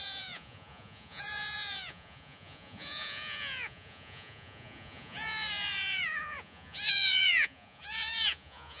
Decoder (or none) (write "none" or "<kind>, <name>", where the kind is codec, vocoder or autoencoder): vocoder, Vocos